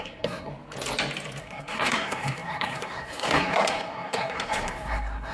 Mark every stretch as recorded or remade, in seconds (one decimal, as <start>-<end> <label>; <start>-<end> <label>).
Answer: 0.0-0.5 remade; 0.5-1.4 recorded; 1.4-5.3 remade